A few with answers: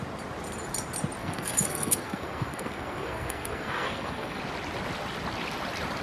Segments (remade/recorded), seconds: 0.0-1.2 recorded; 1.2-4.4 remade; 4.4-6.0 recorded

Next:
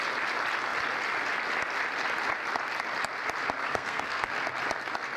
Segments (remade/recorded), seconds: 0.0-3.7 recorded; 3.7-4.3 remade; 4.3-5.2 recorded

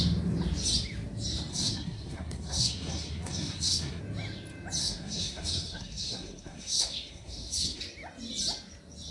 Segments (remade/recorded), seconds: 0.0-1.5 recorded; 1.5-4.0 remade; 4.0-4.8 recorded; 4.8-7.8 remade; 7.8-9.1 recorded

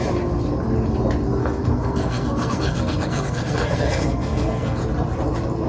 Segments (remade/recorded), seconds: 0.0-1.4 recorded; 1.4-4.8 remade; 4.8-5.7 recorded